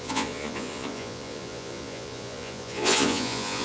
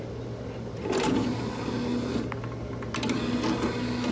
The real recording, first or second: second